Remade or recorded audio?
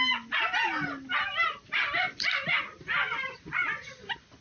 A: recorded